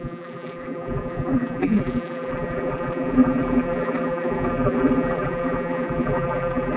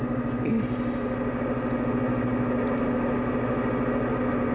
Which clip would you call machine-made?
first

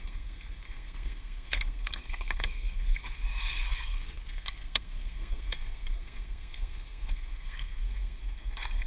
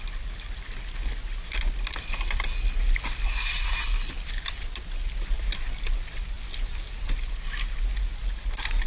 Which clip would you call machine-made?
first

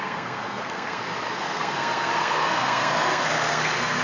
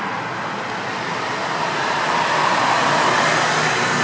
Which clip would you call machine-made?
first